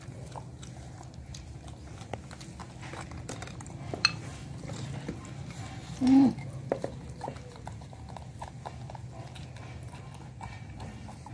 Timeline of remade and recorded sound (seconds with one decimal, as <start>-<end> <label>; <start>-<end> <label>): 0.0-11.3 recorded